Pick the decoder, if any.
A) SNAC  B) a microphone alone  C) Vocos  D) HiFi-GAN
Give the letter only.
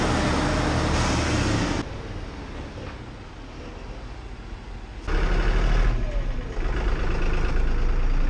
B